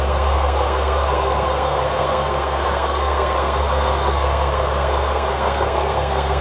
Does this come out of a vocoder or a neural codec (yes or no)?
yes